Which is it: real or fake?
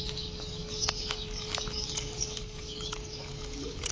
fake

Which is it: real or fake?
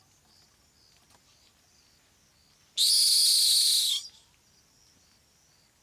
real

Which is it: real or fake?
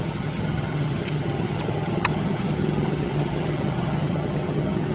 fake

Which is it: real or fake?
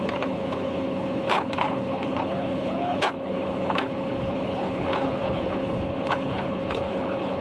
fake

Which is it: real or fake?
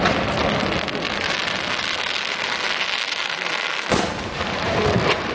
real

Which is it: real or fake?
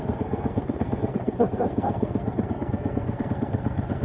fake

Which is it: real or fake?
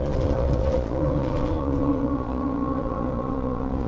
fake